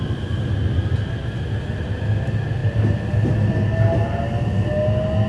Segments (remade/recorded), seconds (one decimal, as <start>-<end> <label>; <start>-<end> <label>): 0.0-5.3 recorded